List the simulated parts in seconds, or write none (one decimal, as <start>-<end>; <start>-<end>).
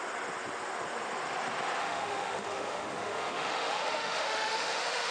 1.8-5.1